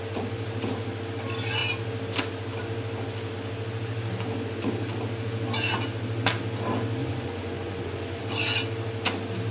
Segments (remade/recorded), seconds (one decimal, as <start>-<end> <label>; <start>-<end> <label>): 0.0-7.0 recorded; 7.0-8.2 remade; 8.2-9.5 recorded

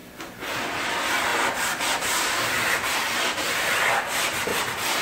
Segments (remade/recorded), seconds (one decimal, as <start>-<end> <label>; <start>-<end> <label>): 0.0-1.3 recorded; 1.3-3.7 remade; 3.7-4.5 recorded; 4.5-5.0 remade

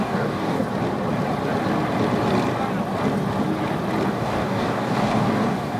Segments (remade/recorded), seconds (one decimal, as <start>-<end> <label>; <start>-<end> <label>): 0.0-0.6 remade; 0.6-4.1 recorded; 4.1-5.8 remade

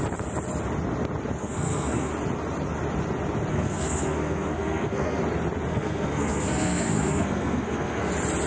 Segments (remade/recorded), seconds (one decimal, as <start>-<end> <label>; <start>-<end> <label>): 0.0-1.4 recorded; 1.4-2.1 remade; 2.1-3.5 recorded; 3.5-5.2 remade; 5.2-5.7 recorded; 5.7-8.1 remade; 8.1-8.5 recorded

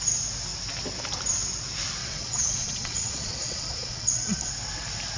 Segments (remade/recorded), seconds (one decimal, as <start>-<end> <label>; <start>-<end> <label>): 0.0-2.0 recorded; 2.0-4.5 remade; 4.5-5.2 recorded